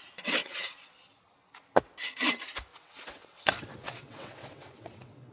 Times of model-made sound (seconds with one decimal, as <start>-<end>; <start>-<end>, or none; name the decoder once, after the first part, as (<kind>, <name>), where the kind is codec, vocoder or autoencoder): 0.4-0.9 (vocoder, WaveNeXt); 2.7-5.3